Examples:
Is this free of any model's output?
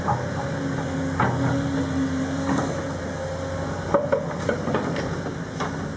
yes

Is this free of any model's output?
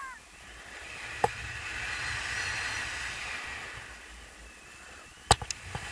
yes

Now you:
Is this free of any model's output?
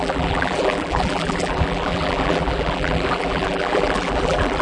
no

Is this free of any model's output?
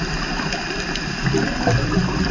yes